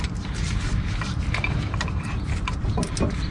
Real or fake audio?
real